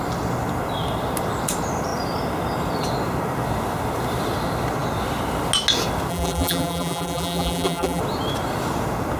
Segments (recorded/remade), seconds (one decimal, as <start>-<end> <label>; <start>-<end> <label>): 0.0-6.1 recorded; 6.1-8.0 remade; 8.0-9.2 recorded